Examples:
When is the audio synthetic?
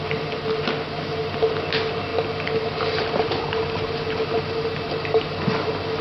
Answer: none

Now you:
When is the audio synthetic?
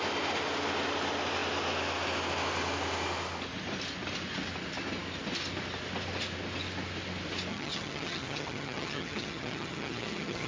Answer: 7.5-10.5 (vocoder, HiFi-GAN)